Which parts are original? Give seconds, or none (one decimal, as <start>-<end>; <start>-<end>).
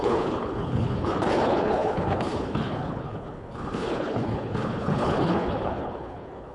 none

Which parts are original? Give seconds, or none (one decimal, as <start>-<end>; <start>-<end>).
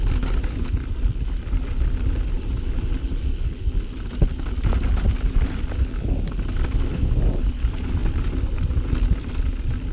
0.0-9.9